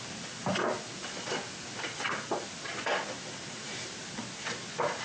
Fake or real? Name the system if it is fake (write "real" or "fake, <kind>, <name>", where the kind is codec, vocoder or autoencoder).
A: real